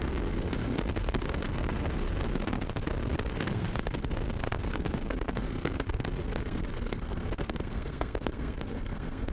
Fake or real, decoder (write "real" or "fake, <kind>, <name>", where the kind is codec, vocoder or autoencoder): fake, codec, SNAC